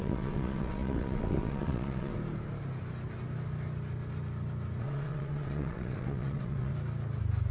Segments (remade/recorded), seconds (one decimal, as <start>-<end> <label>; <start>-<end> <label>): 0.0-2.1 remade; 2.1-4.8 recorded; 4.8-6.7 remade; 6.7-7.5 recorded